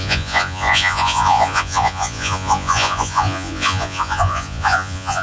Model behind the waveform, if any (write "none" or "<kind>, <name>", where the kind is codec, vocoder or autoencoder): vocoder, Vocos